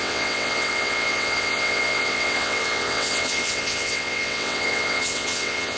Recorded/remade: remade